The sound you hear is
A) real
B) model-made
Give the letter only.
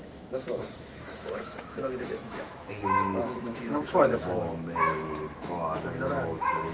B